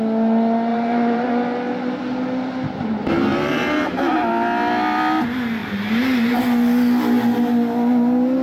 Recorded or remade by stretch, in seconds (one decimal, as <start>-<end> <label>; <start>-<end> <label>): 0.0-0.7 recorded; 0.7-1.3 remade; 1.3-3.3 recorded; 3.3-4.3 remade; 4.3-5.6 recorded; 5.6-6.4 remade; 6.4-8.4 recorded